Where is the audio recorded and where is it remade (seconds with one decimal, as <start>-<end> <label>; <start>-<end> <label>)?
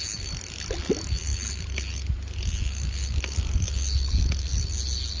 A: 0.0-5.2 recorded